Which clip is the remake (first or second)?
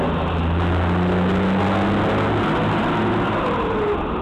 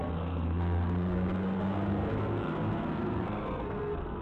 second